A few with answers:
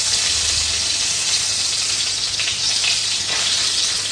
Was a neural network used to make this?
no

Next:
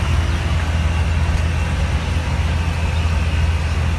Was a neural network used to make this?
no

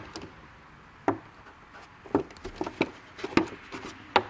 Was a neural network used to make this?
no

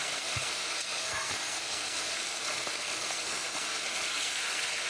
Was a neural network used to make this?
yes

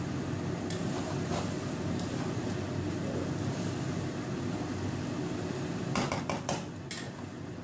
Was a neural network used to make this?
no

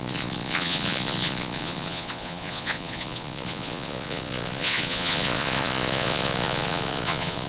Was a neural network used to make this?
yes